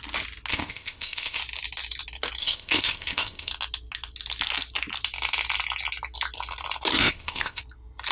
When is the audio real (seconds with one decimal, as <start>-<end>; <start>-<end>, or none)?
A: 0.0-0.5; 1.4-2.4; 3.5-7.0; 7.6-8.1